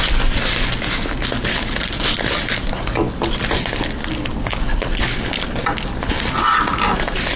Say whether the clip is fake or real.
real